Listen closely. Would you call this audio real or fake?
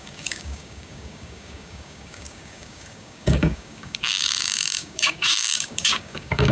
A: fake